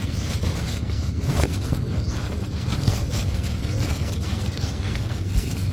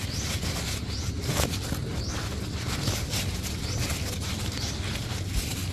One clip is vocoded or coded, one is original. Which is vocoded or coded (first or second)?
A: first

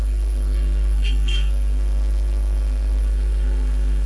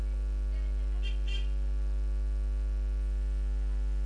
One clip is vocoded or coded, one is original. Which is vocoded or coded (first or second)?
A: first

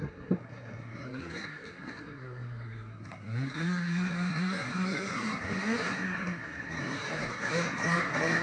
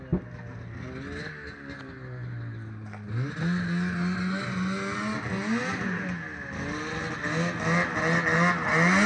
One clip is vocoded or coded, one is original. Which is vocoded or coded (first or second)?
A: first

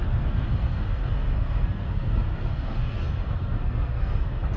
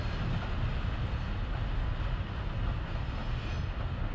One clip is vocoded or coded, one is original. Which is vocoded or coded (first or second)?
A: first